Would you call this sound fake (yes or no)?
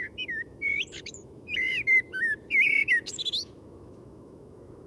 yes